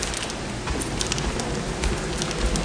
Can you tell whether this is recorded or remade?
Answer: recorded